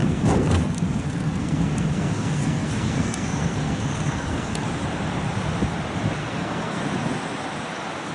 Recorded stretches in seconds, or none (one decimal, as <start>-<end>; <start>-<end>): 4.7-6.2; 6.8-8.1